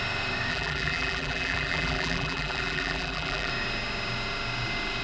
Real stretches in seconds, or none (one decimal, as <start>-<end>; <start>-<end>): 0.0-0.5; 3.5-5.0